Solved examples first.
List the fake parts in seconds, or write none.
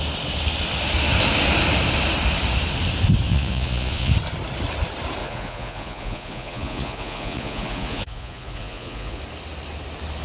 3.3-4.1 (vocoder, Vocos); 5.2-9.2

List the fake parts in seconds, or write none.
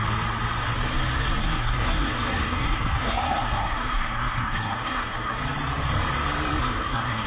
1.4-5.4 (codec, SNAC); 6.6-7.3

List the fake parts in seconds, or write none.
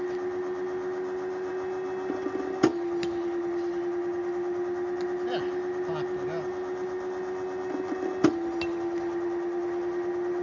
none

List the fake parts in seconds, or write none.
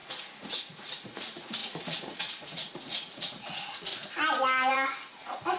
0.0-3.9 (vocoder, Vocos); 4.7-5.6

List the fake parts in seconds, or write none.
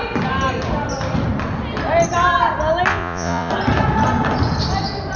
2.9-3.5 (vocoder, Vocos)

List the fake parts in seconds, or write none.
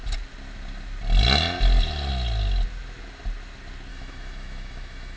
3.9-5.2 (autoencoder, DAC-VAE)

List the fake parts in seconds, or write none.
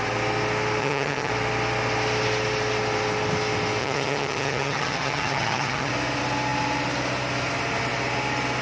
0.8-1.3 (vocoder, HiFi-GAN); 3.8-5.9